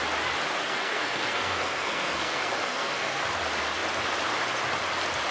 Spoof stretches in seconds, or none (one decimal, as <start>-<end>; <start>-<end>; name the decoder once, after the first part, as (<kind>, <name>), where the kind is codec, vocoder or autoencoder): 0.6-3.2 (codec, SNAC)